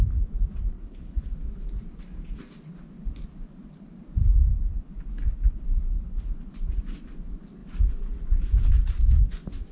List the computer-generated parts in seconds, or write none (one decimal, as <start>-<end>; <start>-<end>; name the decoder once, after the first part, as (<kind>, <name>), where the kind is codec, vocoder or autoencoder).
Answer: 0.7-1.2 (codec, HILCodec); 4.5-6.3